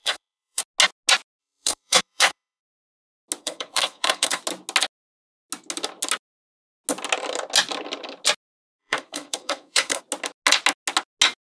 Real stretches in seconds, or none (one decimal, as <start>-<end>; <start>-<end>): 0.6-1.4; 2.6-3.4; 4.4-8.8; 10.0-11.5